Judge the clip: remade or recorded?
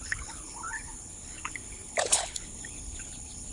remade